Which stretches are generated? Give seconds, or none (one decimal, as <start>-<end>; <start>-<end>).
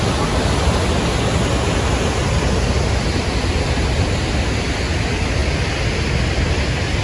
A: none